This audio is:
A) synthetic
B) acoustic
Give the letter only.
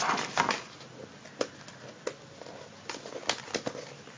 B